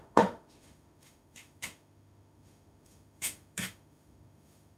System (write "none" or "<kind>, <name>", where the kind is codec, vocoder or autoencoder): autoencoder, DAC-VAE